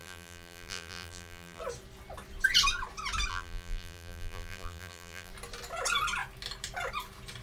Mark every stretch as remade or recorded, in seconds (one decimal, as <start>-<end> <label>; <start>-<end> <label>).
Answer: 0.0-1.6 remade; 1.6-3.3 recorded; 3.3-5.3 remade; 5.3-7.4 recorded